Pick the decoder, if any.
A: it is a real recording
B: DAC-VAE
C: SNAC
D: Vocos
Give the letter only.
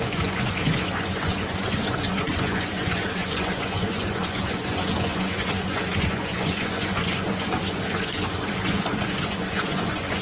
D